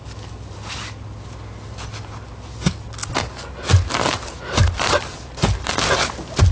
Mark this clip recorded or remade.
recorded